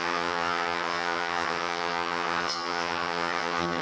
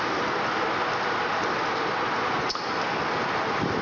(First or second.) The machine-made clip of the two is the first